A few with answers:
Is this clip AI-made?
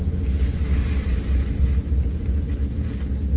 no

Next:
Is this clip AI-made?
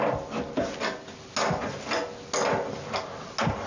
no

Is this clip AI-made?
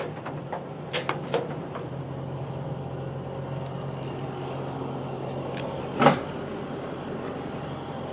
no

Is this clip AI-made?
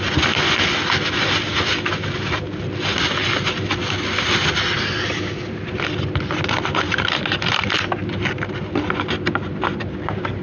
no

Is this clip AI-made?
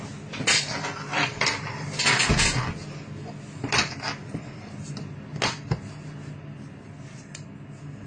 no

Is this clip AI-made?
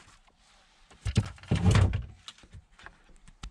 no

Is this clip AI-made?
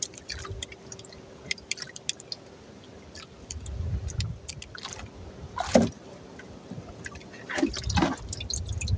no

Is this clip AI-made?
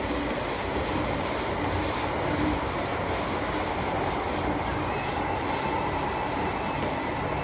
no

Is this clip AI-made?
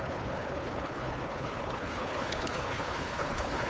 yes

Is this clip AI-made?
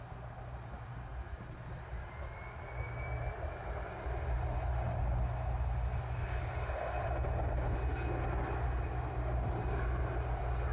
no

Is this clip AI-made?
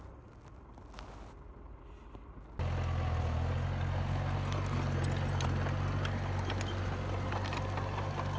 no